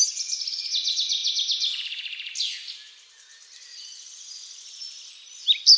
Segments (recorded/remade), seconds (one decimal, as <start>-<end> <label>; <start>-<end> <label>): 0.0-5.8 recorded